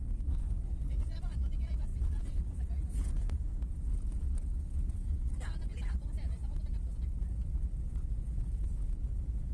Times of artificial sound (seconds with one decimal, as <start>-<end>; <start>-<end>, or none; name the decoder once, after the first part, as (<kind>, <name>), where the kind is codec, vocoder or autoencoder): 0.0-5.7 (vocoder, Vocos); 8.1-9.5